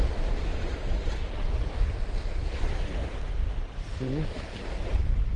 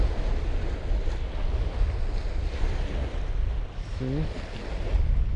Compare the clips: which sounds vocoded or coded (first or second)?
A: first